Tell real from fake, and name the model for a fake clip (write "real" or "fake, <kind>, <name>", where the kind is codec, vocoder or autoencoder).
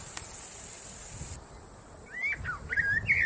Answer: real